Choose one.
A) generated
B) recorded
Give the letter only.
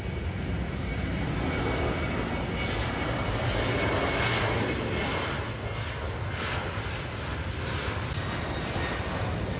B